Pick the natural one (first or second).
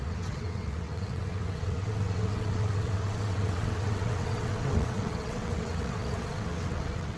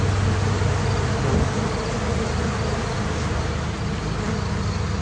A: second